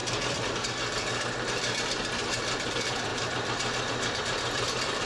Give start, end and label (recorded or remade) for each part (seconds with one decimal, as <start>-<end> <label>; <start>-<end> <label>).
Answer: 0.0-2.7 recorded; 2.7-5.1 remade